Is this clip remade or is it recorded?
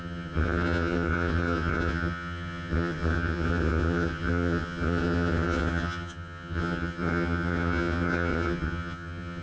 remade